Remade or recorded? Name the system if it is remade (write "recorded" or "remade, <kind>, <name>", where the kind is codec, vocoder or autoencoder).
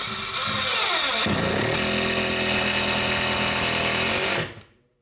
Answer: recorded